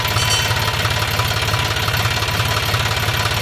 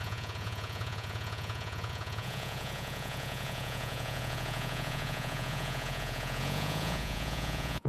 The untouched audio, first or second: first